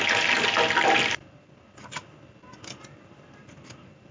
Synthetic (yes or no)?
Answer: no